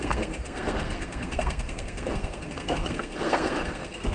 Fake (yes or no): yes